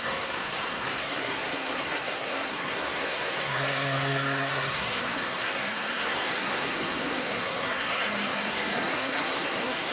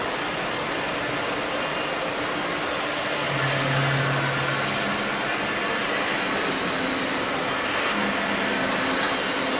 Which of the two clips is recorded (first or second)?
second